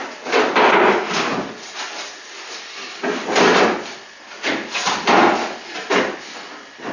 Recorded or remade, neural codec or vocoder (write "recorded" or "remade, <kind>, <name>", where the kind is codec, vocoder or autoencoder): recorded